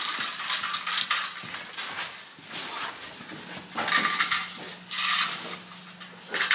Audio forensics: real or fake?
real